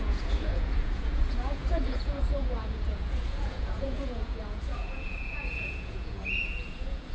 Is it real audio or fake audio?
fake